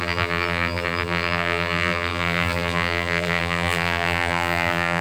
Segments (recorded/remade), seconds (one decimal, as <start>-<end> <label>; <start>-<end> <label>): 0.0-5.0 remade